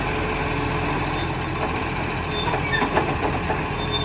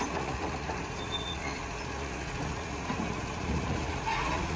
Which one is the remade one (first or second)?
second